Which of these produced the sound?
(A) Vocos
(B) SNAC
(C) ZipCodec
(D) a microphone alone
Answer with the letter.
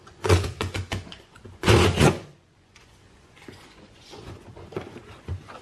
A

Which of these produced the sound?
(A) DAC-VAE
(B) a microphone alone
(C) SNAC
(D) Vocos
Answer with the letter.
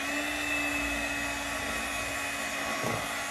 B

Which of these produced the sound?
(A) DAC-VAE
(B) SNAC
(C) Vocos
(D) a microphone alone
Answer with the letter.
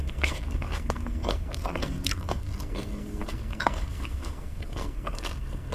B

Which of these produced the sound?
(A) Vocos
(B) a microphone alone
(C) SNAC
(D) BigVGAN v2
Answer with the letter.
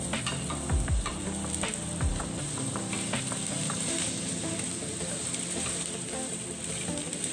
D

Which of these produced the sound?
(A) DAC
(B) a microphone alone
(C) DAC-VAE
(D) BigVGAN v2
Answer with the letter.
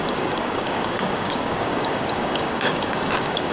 A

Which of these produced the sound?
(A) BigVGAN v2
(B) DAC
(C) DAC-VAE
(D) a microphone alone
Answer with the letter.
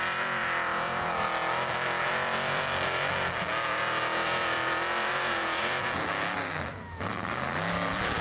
A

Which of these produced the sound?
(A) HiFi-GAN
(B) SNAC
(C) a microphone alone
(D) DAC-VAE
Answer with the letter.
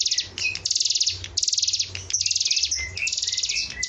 C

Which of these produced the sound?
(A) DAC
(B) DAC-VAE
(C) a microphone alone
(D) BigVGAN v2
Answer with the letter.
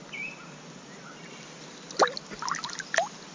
C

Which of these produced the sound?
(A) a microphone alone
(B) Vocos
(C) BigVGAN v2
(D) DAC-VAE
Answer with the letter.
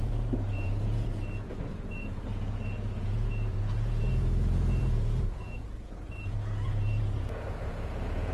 B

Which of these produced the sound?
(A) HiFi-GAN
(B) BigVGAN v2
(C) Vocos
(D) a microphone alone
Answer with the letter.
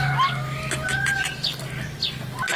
D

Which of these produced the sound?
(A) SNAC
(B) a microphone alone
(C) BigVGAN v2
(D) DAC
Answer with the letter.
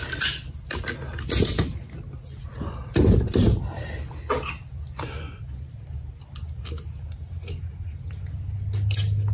B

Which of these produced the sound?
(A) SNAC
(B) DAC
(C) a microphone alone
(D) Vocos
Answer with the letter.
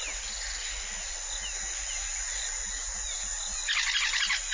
C